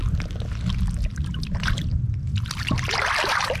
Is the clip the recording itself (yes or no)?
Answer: yes